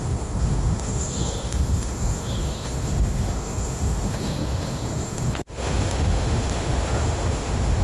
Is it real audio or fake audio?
fake